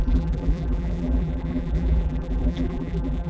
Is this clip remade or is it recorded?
remade